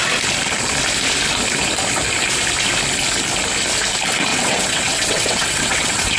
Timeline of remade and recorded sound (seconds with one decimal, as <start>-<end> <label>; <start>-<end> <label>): 0.0-4.3 recorded; 4.3-6.2 remade